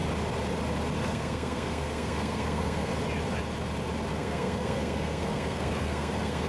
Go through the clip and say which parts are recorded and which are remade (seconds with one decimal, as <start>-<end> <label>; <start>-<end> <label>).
0.0-1.0 recorded; 1.0-2.9 remade; 2.9-4.1 recorded; 4.1-6.5 remade